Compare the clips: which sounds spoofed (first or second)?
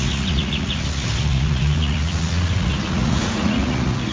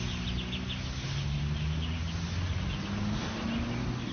first